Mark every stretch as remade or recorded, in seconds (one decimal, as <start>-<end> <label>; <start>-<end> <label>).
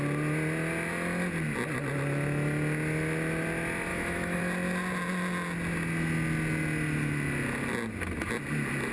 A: 0.0-3.9 recorded; 3.9-4.4 remade; 4.4-8.9 recorded